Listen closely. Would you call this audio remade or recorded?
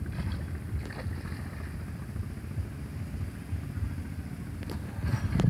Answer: recorded